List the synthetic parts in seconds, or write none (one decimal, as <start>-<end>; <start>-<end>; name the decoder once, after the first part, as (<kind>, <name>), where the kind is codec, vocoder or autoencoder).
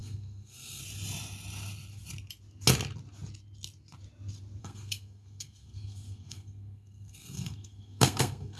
0.0-0.8 (codec, SNAC); 4.6-8.6